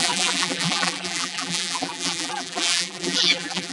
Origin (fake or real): fake